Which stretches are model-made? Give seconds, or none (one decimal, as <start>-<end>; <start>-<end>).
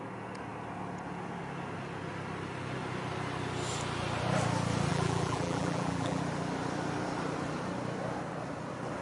4.9-6.2